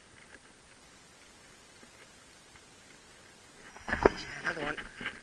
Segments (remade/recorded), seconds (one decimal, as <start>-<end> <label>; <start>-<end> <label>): 0.0-3.7 recorded; 3.7-4.5 remade; 4.5-5.2 recorded